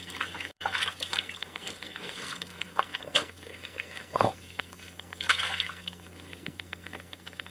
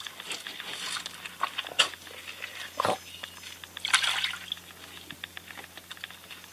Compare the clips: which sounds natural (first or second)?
second